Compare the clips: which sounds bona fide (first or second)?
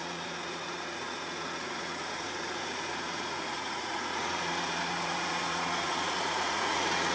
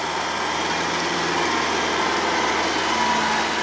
second